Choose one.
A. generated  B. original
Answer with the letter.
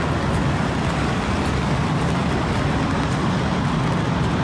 B